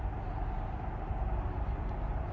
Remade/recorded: recorded